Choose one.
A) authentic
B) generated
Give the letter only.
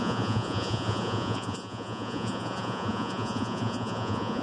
B